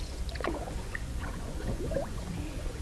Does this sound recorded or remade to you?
remade